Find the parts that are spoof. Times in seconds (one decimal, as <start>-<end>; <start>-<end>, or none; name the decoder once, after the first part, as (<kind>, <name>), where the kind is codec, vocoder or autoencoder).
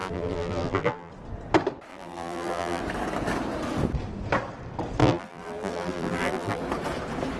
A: 0.0-1.1 (vocoder, BigVGAN v2); 1.9-2.8; 5.0-6.6